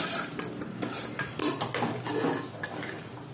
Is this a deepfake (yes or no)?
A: no